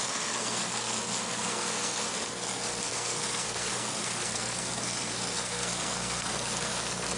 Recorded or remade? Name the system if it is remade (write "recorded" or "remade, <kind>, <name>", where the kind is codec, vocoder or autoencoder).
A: remade, codec, SNAC